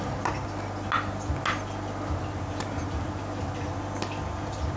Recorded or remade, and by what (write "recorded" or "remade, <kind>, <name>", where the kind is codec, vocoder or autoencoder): recorded